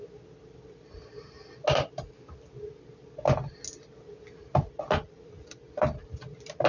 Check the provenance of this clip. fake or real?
real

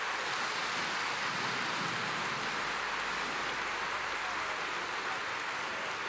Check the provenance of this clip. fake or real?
real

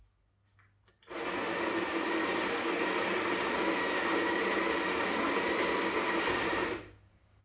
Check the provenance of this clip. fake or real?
real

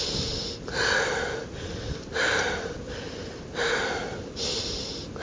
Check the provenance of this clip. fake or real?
real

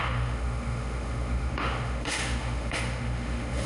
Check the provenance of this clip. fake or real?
fake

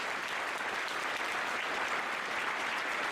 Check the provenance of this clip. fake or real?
real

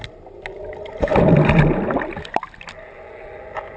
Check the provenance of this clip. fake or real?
real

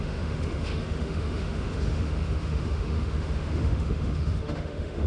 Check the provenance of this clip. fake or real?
fake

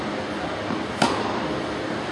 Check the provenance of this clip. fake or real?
real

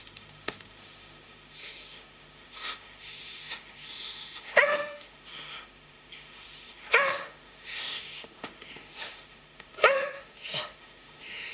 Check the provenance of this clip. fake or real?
fake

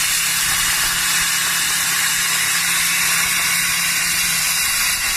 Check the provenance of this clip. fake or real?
real